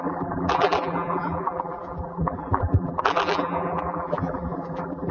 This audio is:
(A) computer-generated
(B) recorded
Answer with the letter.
A